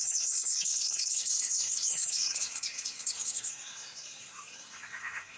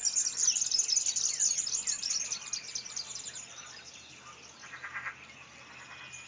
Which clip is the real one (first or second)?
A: second